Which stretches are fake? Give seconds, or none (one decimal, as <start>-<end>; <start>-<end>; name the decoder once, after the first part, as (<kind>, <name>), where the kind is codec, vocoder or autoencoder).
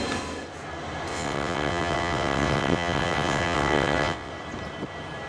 1.1-4.3 (vocoder, WaveNeXt)